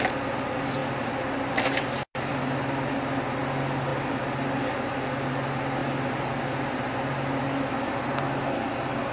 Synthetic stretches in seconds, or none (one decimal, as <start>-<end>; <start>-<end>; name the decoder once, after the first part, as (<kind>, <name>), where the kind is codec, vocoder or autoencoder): none

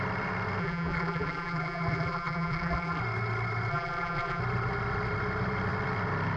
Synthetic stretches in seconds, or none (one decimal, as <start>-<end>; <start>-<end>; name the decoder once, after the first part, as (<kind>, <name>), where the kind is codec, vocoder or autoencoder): 0.6-3.0 (vocoder, BigVGAN v2); 3.7-4.4

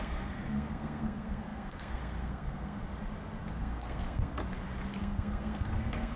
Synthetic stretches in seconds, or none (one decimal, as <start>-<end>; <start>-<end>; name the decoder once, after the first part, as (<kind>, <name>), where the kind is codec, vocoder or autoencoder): 0.0-2.8 (codec, SNAC); 3.6-4.4; 5.0-6.2

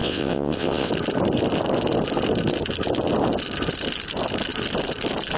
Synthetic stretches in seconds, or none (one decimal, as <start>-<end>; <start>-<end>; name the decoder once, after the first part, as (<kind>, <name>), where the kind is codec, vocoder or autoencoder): 0.0-0.9 (vocoder, WaveNeXt)

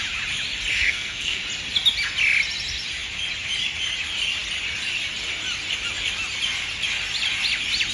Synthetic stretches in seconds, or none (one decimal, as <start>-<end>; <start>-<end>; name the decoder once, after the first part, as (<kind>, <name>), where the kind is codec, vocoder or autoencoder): 0.7-1.4 (codec, SNAC)

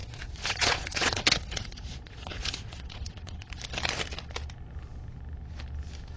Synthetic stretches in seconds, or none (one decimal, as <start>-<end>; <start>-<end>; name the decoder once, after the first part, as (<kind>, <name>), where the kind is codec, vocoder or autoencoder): 0.0-3.5 (vocoder, Vocos)